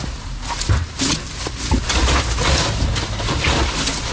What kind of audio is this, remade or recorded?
recorded